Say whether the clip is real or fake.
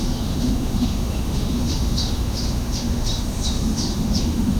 fake